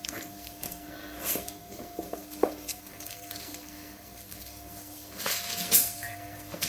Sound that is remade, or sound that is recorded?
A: remade